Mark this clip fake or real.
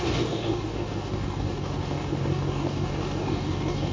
fake